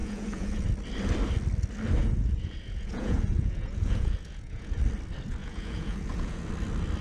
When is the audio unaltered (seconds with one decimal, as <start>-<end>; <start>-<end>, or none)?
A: 0.7-2.0; 4.8-5.4; 6.5-7.0